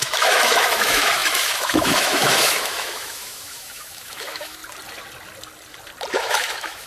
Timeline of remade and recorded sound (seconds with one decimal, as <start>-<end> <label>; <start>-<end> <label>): 0.0-4.6 remade; 4.6-6.1 recorded; 6.1-6.9 remade